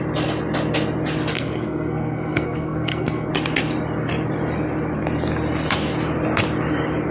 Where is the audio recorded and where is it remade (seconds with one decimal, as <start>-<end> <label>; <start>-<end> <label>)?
0.0-1.3 recorded; 1.3-3.3 remade; 3.3-7.1 recorded